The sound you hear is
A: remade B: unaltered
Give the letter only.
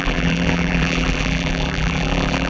A